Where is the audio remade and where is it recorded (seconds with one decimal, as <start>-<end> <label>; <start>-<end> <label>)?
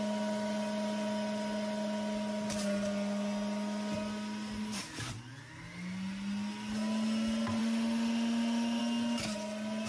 0.0-7.6 recorded; 7.6-8.8 remade; 8.8-9.9 recorded